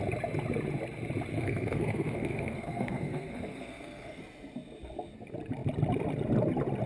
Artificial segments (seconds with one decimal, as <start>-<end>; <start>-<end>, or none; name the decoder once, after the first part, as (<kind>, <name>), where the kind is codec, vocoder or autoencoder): 1.3-4.2 (codec, SNAC)